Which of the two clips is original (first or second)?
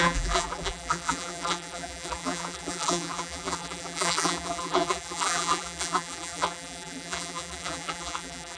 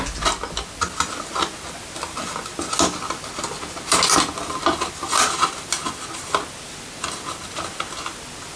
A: second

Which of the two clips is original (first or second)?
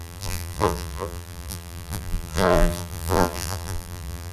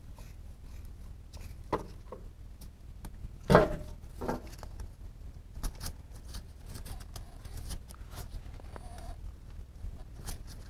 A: second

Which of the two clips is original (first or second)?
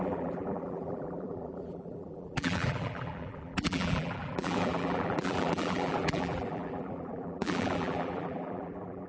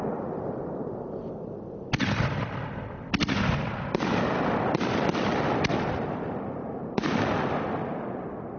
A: second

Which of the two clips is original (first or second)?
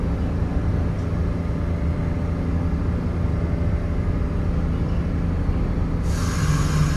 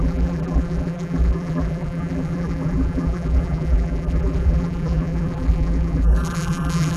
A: first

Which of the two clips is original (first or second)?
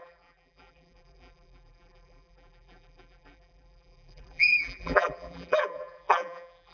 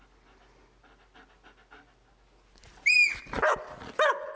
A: second